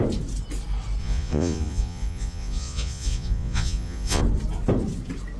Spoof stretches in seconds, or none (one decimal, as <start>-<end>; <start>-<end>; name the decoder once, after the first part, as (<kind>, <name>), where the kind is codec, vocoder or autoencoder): 1.0-4.2 (vocoder, Vocos)